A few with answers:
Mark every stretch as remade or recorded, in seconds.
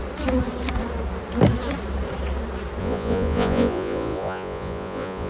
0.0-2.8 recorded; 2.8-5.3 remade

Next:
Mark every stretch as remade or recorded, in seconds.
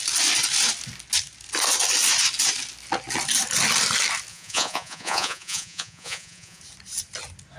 0.0-4.3 recorded; 4.3-6.6 remade; 6.6-7.6 recorded